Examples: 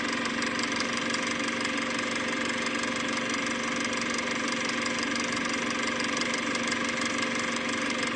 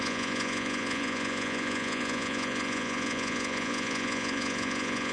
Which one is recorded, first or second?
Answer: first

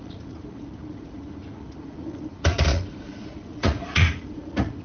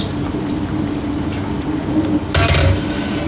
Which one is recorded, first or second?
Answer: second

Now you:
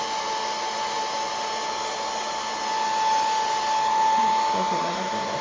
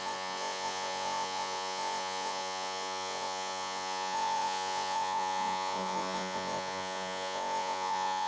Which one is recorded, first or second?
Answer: first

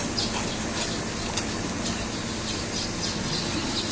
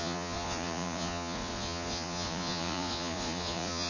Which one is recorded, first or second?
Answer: first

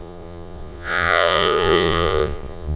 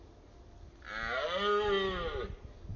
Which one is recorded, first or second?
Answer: second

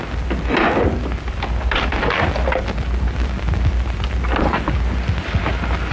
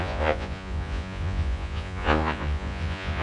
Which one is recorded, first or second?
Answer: first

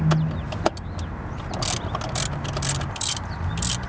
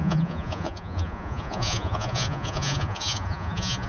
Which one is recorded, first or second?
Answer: first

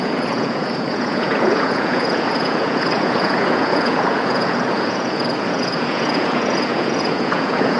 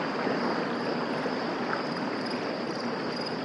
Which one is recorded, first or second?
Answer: second